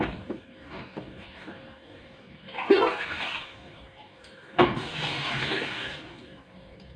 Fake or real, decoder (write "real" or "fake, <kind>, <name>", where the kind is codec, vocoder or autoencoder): fake, codec, DAC